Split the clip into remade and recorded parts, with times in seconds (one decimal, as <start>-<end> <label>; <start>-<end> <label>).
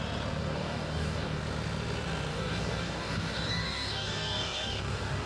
0.0-0.4 recorded; 0.4-1.4 remade; 1.4-2.3 recorded; 2.3-5.3 remade